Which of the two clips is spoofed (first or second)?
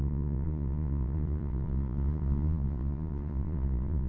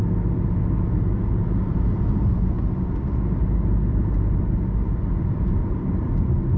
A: first